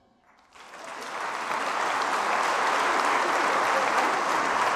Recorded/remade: recorded